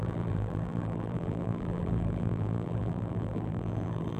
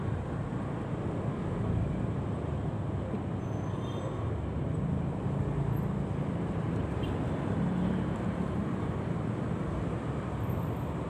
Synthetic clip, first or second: first